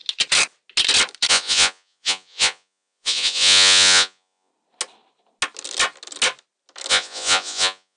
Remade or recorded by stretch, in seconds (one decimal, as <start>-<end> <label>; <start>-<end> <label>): 0.0-1.3 recorded; 1.3-4.5 remade; 4.5-6.9 recorded; 6.9-8.0 remade